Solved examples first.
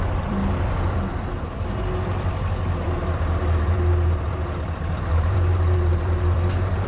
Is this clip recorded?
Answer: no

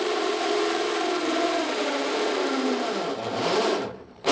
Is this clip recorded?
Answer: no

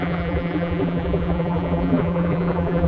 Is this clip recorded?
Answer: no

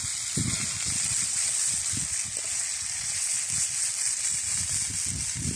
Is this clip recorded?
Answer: yes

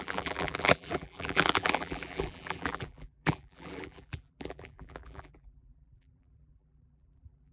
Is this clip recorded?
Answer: no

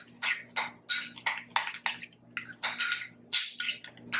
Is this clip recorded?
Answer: yes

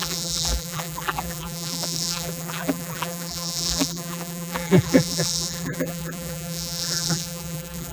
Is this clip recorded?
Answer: no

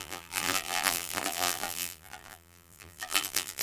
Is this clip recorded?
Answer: no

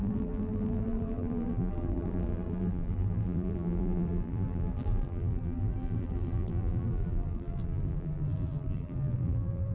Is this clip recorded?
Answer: no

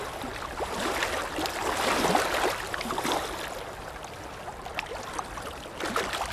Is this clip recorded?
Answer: yes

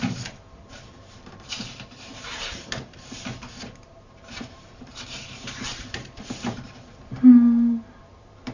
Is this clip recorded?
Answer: no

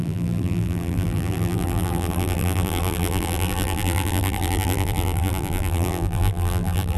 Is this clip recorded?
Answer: no